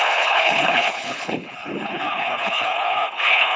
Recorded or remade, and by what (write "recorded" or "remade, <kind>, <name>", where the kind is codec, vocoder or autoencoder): remade, codec, HILCodec